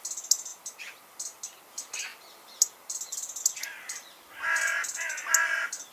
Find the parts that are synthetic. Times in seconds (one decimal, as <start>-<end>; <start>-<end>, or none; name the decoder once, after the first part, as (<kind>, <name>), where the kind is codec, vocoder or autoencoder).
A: 0.0-5.9 (vocoder, BigVGAN v2)

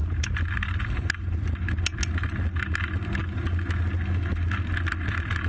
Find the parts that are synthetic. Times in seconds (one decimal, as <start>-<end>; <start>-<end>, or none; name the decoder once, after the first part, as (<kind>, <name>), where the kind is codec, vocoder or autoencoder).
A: none

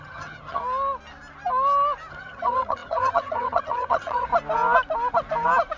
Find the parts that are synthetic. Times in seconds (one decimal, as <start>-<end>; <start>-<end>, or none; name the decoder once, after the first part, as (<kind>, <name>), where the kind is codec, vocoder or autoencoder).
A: 0.0-0.6 (vocoder, HiFi-GAN); 2.1-4.3

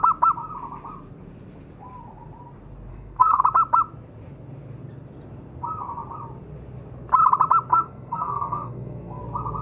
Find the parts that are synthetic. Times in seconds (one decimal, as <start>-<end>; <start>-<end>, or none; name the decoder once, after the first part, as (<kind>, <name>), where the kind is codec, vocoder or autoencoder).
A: 2.9-3.4 (codec, SNAC); 7.7-9.2